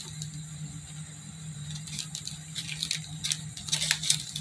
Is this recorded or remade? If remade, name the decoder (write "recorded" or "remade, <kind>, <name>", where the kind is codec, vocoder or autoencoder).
recorded